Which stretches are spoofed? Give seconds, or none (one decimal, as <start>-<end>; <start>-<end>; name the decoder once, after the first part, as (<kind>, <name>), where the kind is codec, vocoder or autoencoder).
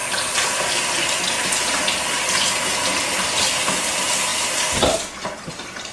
none